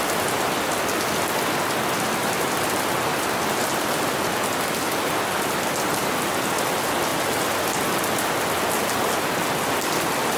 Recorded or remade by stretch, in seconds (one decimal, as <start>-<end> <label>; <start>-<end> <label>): 0.0-10.4 recorded